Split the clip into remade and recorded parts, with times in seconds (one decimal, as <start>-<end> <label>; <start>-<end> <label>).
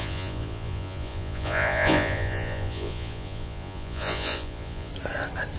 0.0-4.9 remade; 4.9-5.6 recorded